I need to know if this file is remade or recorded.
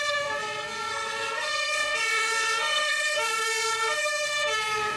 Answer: remade